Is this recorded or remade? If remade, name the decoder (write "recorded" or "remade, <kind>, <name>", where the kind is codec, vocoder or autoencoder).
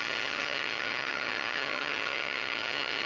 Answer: remade, vocoder, HiFi-GAN